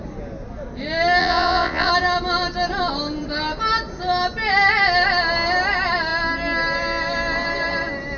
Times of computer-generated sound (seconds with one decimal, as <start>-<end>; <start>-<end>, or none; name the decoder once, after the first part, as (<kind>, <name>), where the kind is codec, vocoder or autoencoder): 1.2-1.9 (vocoder, Vocos)